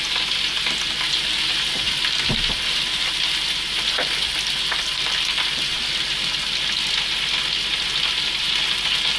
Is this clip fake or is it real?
real